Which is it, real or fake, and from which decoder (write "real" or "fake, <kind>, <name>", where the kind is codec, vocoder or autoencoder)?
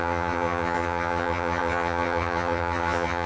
fake, vocoder, HiFi-GAN